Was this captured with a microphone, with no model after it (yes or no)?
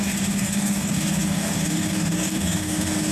no